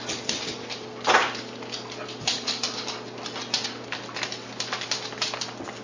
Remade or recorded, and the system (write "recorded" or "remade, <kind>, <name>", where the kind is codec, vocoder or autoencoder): recorded